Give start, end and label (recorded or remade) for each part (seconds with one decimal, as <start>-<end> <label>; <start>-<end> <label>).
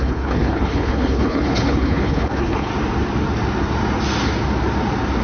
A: 0.0-2.7 remade; 2.7-5.2 recorded